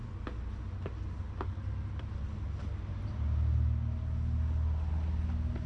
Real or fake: real